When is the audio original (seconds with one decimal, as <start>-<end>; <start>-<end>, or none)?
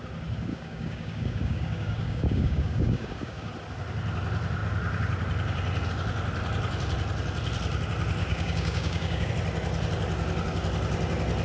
0.0-0.5; 3.5-8.2; 9.3-11.4